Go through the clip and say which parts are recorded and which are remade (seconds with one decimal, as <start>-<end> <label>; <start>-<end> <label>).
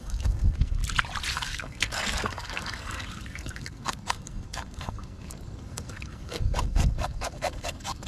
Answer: 0.0-0.8 remade; 0.8-1.3 recorded; 1.3-8.1 remade